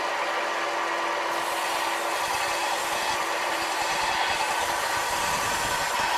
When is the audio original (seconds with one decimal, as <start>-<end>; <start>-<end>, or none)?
0.0-2.6; 5.5-6.2